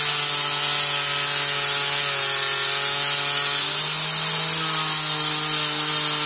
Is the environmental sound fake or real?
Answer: real